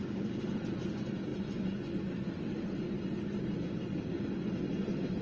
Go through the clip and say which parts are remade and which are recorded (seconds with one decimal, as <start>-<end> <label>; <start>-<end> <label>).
0.0-1.3 recorded; 1.3-1.9 remade; 1.9-5.2 recorded

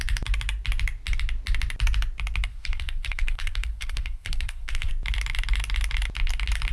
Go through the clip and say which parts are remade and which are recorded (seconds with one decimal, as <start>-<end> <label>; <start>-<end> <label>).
0.0-2.5 recorded; 2.5-4.9 remade; 4.9-6.7 recorded

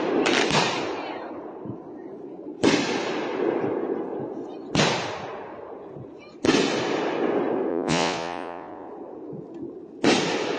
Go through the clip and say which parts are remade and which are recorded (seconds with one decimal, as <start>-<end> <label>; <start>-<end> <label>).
0.0-7.7 recorded; 7.7-8.9 remade; 8.9-10.6 recorded

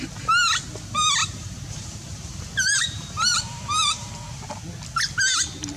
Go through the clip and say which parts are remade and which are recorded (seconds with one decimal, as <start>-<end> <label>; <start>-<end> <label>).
0.0-1.2 recorded; 1.2-4.1 remade; 4.1-5.8 recorded

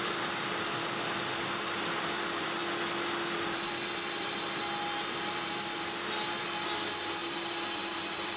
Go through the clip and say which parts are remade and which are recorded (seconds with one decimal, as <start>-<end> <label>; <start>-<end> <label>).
0.0-2.6 remade; 2.6-3.4 recorded; 3.4-7.2 remade; 7.2-7.9 recorded; 7.9-8.4 remade

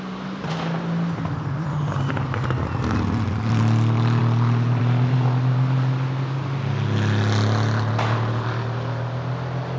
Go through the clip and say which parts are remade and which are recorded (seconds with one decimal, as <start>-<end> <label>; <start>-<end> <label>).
0.0-9.8 recorded

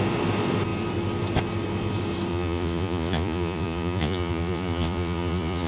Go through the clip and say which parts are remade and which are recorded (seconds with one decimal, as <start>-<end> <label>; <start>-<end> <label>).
0.0-2.3 recorded; 2.3-5.7 remade